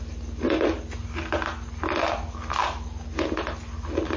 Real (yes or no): yes